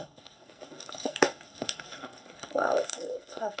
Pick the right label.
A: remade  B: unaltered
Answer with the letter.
A